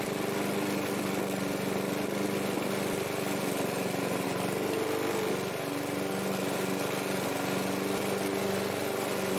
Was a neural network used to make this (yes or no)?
no